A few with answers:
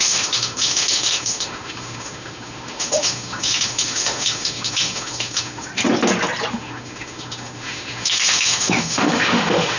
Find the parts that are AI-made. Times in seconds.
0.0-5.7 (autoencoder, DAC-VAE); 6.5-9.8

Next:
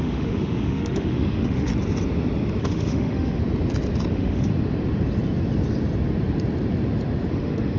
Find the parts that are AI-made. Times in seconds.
0.0-1.7 (autoencoder, DAC-VAE); 2.6-3.4; 4.1-4.5; 7.3-7.8

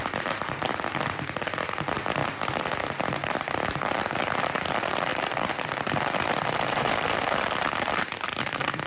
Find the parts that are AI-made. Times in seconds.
0.0-2.2 (vocoder, BigVGAN v2); 3.0-8.9